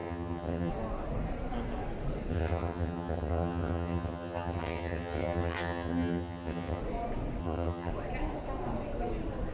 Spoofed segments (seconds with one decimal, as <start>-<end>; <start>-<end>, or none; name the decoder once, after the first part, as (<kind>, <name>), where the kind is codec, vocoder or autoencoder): 0.0-0.7 (vocoder, HiFi-GAN); 2.3-6.8; 7.4-7.9